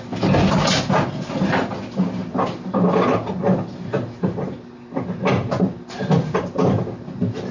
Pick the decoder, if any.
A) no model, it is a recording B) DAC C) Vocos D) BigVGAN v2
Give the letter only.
A